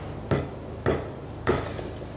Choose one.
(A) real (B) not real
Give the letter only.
A